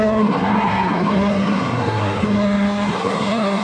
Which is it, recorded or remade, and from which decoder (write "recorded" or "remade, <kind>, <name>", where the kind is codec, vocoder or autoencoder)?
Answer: remade, codec, SNAC